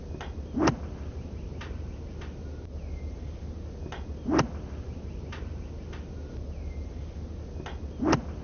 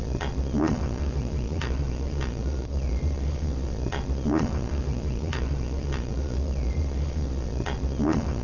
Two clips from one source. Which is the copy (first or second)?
second